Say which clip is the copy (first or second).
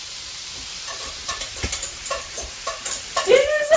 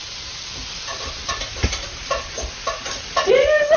first